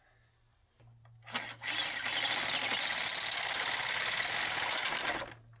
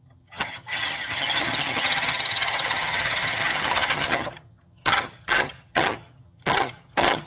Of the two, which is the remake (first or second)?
second